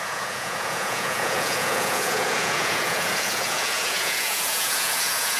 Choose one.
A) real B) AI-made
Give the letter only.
B